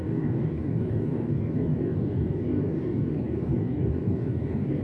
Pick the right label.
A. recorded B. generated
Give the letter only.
B